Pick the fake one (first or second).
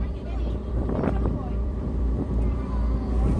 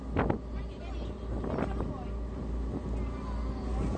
first